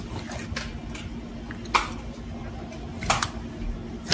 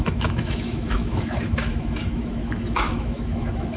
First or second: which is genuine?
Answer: first